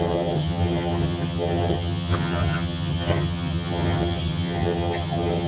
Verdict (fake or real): fake